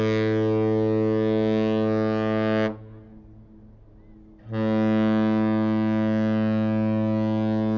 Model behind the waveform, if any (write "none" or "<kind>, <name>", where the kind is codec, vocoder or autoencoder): none